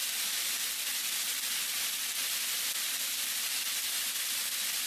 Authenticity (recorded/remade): recorded